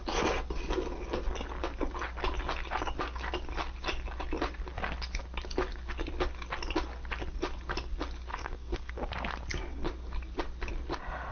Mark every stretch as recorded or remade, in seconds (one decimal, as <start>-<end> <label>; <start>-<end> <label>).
0.0-8.3 recorded; 8.3-8.9 remade; 8.9-11.3 recorded